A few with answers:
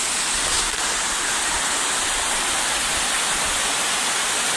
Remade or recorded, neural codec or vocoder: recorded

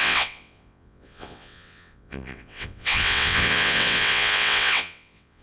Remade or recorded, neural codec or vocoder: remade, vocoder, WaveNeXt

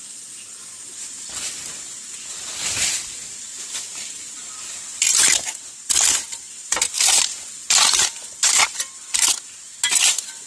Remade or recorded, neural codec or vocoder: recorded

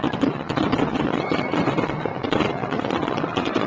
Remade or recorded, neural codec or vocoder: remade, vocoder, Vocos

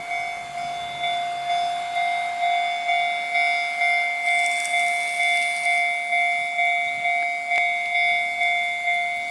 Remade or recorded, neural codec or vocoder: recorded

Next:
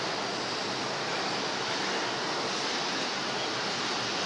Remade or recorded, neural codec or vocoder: recorded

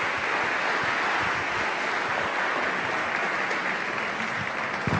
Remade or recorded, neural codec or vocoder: recorded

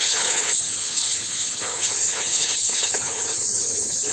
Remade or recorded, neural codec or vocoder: remade, codec, HILCodec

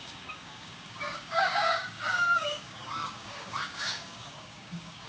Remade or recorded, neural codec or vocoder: remade, codec, DAC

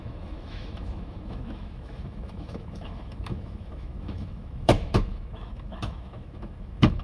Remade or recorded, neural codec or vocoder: remade, autoencoder, DAC-VAE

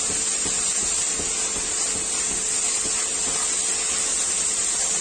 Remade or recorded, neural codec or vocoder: recorded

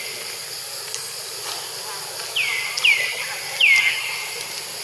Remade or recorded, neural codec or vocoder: recorded